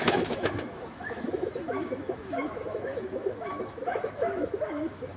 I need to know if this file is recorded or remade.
remade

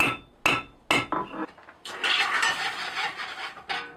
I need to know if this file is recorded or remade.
recorded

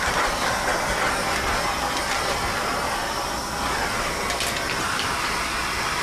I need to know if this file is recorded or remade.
recorded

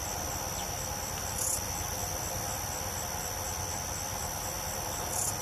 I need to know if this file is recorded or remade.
recorded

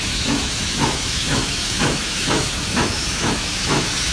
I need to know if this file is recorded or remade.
remade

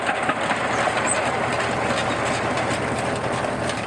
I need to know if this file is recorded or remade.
recorded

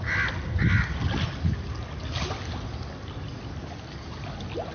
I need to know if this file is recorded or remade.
recorded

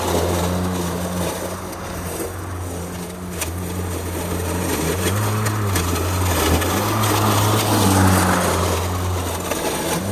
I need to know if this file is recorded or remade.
recorded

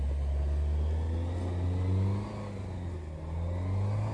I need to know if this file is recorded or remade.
recorded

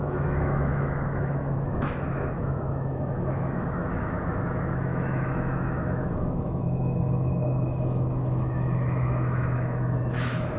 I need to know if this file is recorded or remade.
remade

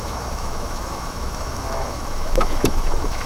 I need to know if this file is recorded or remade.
remade